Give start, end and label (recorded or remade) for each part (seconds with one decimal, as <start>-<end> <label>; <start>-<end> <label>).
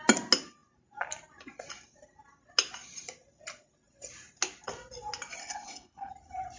0.0-5.4 recorded; 5.4-6.1 remade; 6.1-6.6 recorded